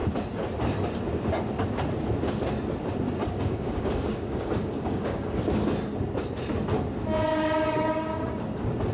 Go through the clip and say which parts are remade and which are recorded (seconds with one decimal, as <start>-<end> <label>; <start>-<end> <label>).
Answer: 0.0-3.2 recorded; 3.2-5.4 remade; 5.4-7.3 recorded; 7.3-8.4 remade; 8.4-8.9 recorded